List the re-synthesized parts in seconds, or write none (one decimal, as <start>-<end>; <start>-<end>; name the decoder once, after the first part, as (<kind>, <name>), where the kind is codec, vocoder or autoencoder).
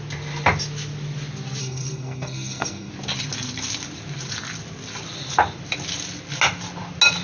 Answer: 1.6-2.9 (codec, SNAC)